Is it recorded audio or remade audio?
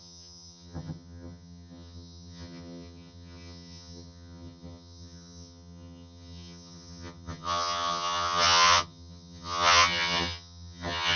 remade